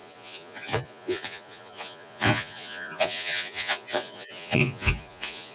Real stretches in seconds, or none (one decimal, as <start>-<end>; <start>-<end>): none